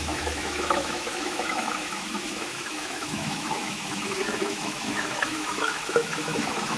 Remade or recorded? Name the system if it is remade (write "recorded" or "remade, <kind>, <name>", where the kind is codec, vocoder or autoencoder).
remade, autoencoder, DAC-VAE